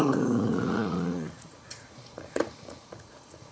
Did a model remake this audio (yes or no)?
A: yes